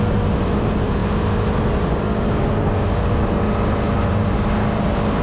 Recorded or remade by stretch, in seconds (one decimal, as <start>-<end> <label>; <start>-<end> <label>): 0.0-5.2 recorded